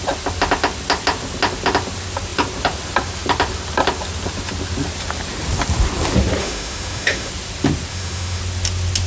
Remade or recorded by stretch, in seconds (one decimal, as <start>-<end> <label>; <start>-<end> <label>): 0.0-6.4 recorded; 6.4-7.3 remade; 7.3-7.9 recorded; 7.9-8.4 remade; 8.4-9.1 recorded